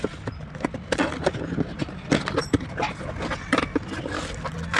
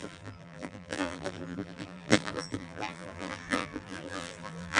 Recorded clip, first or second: first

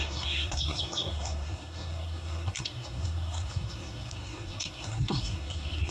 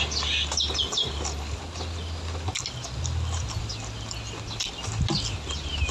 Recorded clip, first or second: second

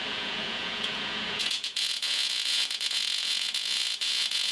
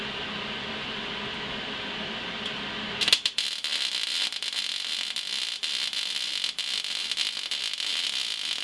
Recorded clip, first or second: second